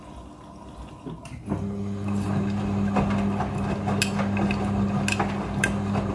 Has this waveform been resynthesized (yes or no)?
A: no